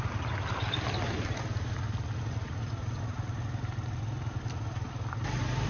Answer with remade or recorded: recorded